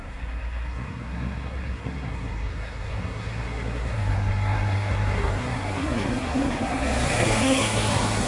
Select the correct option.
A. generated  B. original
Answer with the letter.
A